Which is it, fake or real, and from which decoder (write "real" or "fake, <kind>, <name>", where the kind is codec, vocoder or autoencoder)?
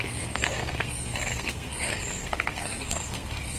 fake, codec, SNAC